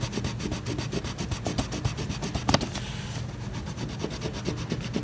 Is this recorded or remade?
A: recorded